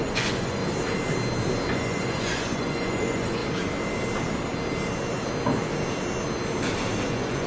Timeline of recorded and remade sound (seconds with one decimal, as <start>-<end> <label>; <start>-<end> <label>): 0.0-0.6 remade; 0.6-1.7 recorded; 1.7-3.4 remade; 3.4-7.1 recorded; 7.1-7.5 remade